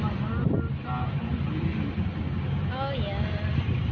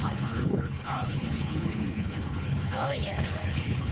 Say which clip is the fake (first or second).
second